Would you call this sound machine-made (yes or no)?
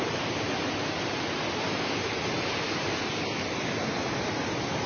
no